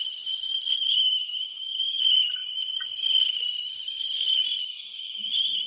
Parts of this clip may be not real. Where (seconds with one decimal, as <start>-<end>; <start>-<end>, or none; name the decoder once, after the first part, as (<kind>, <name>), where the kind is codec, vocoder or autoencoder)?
0.8-2.0 (autoencoder, DAC-VAE); 4.6-5.7